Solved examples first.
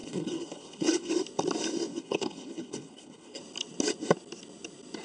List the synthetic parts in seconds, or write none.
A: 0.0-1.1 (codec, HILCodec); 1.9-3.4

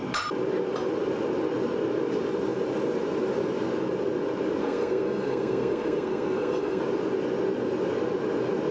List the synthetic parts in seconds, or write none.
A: 4.6-6.8 (codec, SNAC)

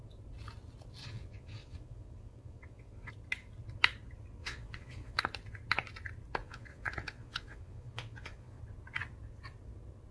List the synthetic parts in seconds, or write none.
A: 1.0-3.1 (vocoder, Vocos); 4.4-5.2; 6.4-8.6